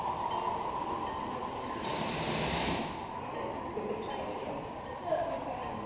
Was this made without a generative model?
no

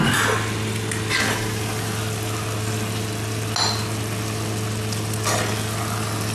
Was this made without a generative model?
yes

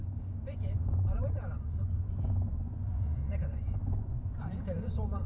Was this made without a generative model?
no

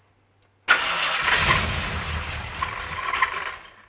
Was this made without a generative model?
yes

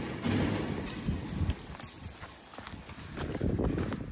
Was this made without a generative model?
yes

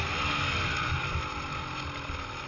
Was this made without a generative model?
yes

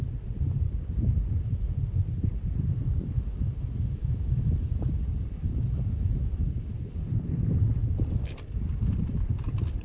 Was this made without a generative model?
yes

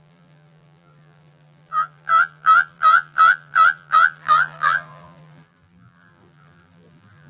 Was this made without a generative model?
no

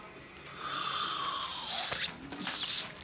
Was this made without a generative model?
yes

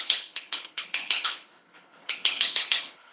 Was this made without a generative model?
no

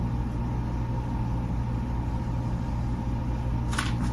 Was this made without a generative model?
yes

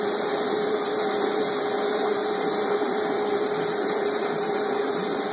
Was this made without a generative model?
no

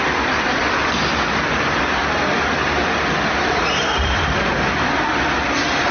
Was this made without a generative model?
yes